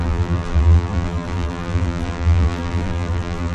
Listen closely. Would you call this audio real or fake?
fake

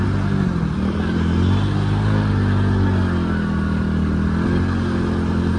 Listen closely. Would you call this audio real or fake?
real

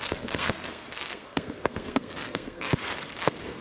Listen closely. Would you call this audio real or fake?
fake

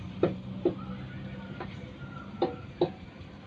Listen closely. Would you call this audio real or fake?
fake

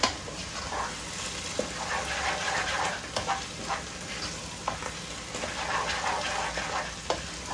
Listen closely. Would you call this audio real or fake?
real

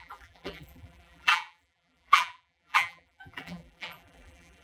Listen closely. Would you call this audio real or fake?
fake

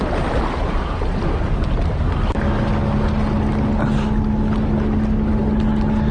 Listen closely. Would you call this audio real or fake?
real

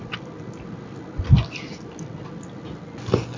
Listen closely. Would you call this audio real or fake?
real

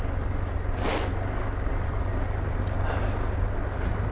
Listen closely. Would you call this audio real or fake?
real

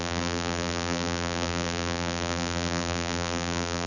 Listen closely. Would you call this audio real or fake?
fake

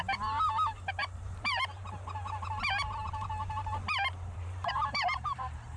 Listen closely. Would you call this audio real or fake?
fake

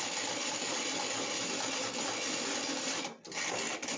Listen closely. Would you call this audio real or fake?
real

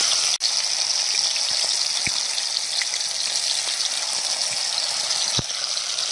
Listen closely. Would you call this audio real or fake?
real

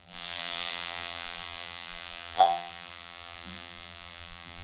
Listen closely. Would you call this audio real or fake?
fake